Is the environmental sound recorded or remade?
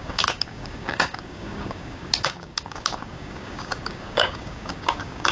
remade